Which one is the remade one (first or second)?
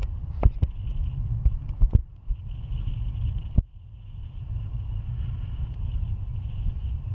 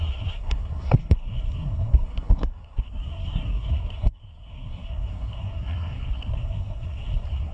second